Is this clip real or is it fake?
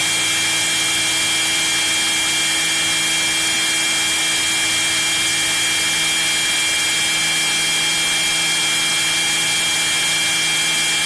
real